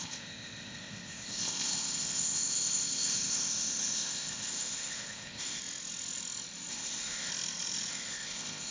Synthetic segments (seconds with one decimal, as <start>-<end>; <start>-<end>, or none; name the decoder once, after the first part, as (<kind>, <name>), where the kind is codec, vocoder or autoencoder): 0.0-5.6 (codec, ZipCodec); 6.7-7.3; 7.9-8.7